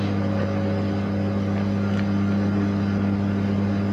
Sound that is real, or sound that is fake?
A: real